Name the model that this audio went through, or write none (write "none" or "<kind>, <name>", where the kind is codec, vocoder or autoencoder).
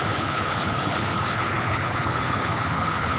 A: codec, HILCodec